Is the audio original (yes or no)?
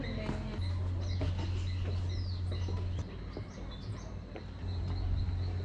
yes